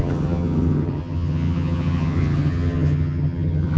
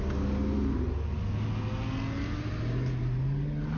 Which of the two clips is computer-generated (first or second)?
first